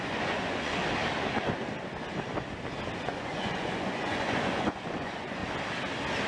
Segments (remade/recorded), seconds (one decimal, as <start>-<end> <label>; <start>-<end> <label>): 0.0-0.8 remade; 0.8-3.0 recorded; 3.0-5.4 remade; 5.4-6.3 recorded